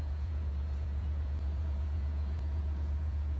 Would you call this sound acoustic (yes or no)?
no